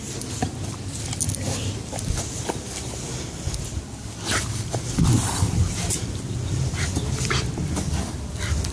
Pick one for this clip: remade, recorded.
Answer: recorded